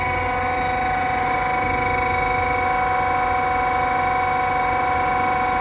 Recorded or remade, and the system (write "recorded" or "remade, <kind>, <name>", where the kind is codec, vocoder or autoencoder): recorded